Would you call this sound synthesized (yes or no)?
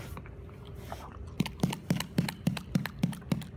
yes